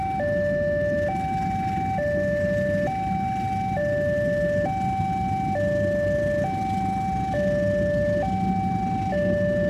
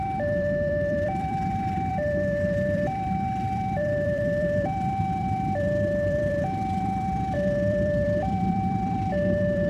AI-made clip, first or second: second